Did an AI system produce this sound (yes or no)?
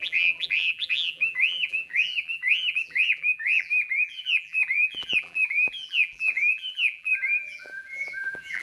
yes